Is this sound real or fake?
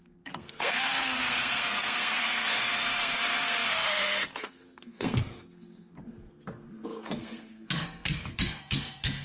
fake